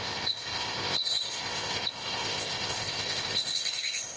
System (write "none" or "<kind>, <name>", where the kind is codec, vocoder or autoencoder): codec, ZipCodec